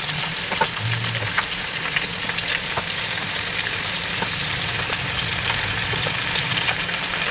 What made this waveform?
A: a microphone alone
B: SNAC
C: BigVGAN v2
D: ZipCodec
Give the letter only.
A